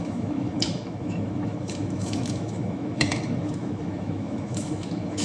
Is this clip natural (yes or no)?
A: no